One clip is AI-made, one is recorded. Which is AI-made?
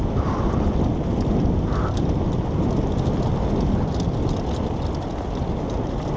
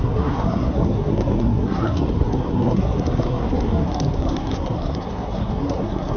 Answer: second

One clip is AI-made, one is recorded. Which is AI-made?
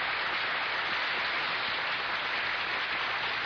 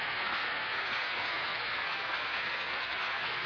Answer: second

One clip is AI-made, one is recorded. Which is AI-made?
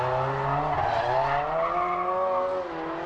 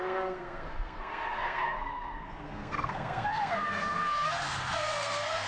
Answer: second